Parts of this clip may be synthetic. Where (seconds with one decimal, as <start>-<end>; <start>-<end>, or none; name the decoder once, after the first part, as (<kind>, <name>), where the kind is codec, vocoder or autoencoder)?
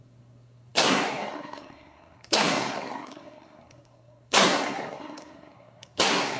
0.0-6.4 (codec, SNAC)